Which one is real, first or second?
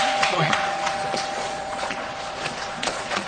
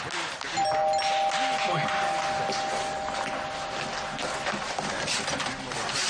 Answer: second